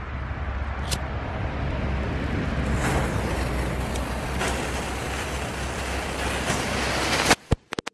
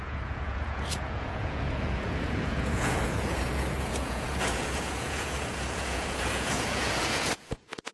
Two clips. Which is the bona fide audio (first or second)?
first